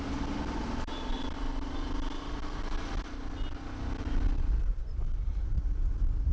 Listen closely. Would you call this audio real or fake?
real